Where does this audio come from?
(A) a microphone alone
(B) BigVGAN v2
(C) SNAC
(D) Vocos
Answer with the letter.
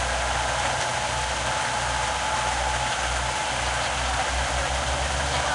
A